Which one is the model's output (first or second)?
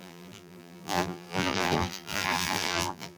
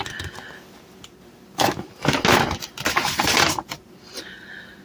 first